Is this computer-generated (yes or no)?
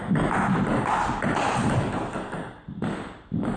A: no